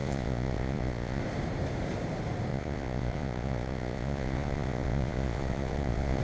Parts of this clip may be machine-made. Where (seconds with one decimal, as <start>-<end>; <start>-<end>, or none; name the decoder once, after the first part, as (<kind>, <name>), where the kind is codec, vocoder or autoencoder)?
0.0-1.2 (vocoder, Vocos); 2.5-6.2